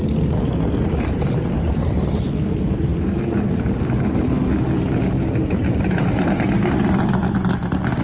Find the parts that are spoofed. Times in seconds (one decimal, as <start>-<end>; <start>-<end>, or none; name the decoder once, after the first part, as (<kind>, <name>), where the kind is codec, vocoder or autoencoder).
none